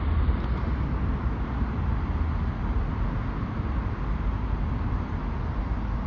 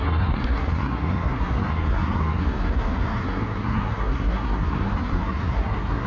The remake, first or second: second